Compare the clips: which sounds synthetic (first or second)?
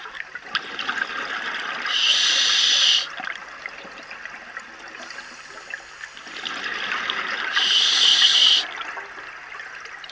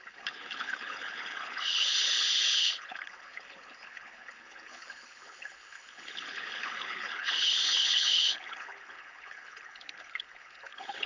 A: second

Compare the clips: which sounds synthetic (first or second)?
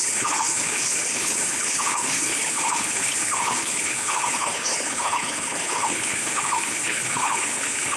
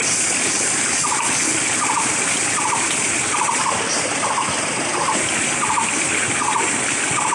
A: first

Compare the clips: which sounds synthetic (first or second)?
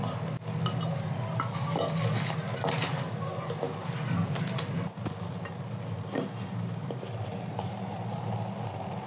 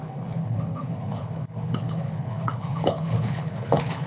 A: second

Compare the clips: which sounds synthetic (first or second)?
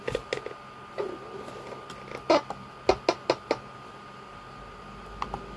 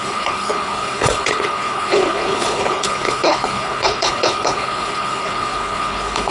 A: second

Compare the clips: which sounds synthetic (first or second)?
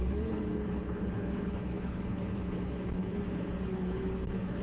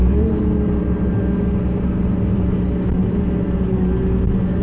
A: first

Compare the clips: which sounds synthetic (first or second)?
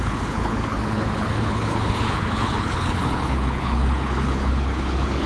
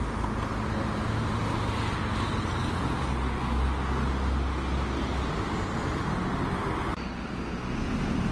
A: first